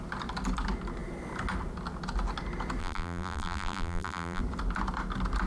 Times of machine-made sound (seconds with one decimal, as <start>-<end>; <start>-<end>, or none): 2.8-4.4